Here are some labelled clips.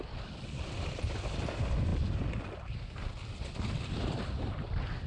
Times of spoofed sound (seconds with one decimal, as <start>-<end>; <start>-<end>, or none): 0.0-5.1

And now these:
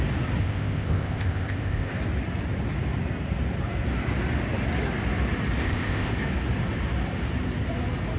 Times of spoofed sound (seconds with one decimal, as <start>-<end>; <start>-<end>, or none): 0.4-1.9; 5.6-6.1

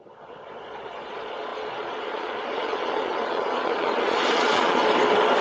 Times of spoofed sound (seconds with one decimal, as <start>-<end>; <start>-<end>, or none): 0.0-4.8

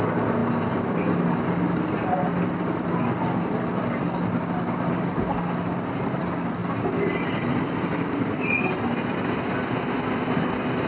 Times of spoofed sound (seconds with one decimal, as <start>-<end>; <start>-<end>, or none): none

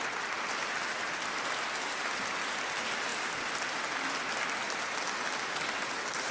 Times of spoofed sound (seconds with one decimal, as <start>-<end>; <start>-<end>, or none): none

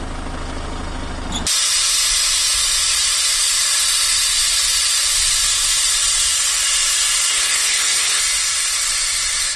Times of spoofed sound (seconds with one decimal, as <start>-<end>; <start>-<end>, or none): 7.3-8.2